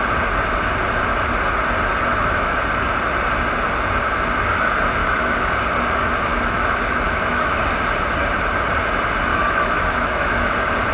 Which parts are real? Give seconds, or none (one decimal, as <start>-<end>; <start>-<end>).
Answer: 0.0-2.1; 2.6-5.0; 5.5-6.3; 7.6-9.3; 10.5-10.9